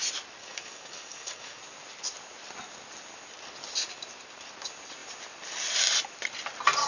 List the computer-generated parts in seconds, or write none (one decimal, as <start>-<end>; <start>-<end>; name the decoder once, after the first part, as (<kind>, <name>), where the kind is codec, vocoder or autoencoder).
0.4-1.6 (codec, DAC)

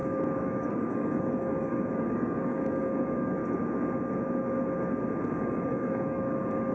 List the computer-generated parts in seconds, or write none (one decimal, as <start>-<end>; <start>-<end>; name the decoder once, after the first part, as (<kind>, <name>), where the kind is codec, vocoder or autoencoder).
0.0-3.4 (codec, DAC); 5.3-6.7

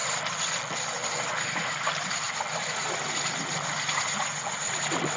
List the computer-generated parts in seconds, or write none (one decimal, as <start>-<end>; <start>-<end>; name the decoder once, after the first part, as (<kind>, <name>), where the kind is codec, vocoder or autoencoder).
none